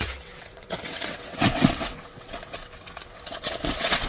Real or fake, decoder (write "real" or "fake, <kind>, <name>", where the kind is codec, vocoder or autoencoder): fake, vocoder, WaveNeXt